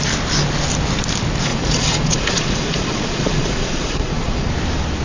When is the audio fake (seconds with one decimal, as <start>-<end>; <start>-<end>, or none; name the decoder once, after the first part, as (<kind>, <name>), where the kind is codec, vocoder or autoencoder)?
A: 1.5-4.5 (vocoder, Vocos)